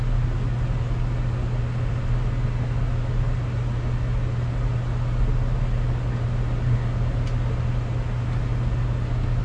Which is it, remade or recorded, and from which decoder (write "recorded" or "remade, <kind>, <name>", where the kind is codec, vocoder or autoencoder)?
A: recorded